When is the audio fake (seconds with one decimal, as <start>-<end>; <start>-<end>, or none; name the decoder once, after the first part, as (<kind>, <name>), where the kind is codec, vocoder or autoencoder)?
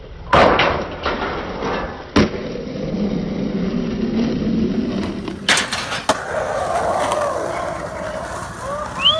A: none